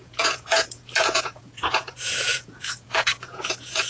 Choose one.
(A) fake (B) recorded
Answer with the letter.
A